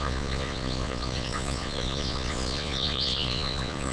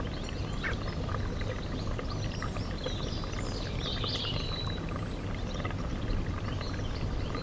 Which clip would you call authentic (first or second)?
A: second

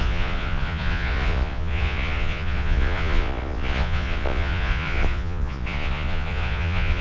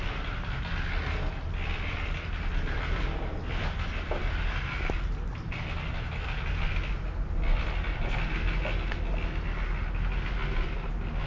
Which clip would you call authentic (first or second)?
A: second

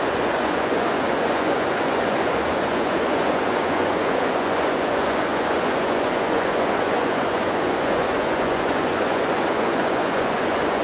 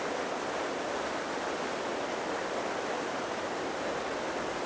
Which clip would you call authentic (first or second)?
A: second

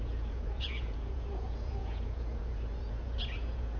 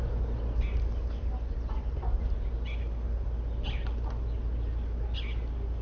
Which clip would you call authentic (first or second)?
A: second